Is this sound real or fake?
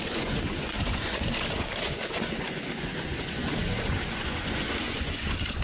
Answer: fake